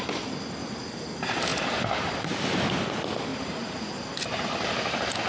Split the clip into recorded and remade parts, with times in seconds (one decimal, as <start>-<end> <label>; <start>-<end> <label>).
0.0-1.5 recorded; 1.5-2.4 remade; 2.4-3.3 recorded; 3.3-4.7 remade; 4.7-5.3 recorded

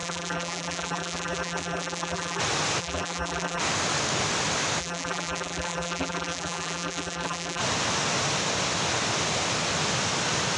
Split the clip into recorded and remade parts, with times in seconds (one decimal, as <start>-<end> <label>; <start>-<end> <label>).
0.0-2.4 remade; 2.4-2.8 recorded; 2.8-3.6 remade; 3.6-4.8 recorded; 4.8-7.6 remade; 7.6-10.6 recorded

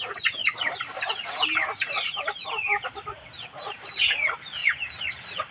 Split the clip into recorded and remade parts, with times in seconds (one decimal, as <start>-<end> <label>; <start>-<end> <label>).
0.0-0.4 recorded; 0.4-2.9 remade; 2.9-4.6 recorded; 4.6-5.5 remade

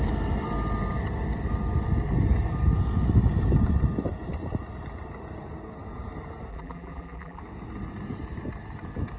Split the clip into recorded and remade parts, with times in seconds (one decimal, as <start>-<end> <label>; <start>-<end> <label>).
0.0-6.5 recorded; 6.5-7.4 remade; 7.4-9.2 recorded

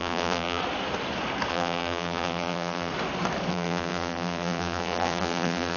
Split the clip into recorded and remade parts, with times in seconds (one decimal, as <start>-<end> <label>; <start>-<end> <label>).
0.0-0.6 remade; 0.6-1.5 recorded; 1.5-2.9 remade; 2.9-3.5 recorded; 3.5-5.8 remade

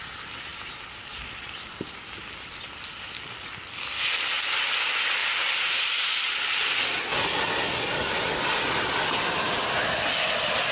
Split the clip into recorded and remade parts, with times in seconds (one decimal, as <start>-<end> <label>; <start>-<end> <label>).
0.0-0.5 recorded; 0.5-2.5 remade; 2.5-5.2 recorded; 5.2-5.9 remade; 5.9-10.7 recorded